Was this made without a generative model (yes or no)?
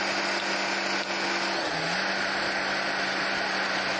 yes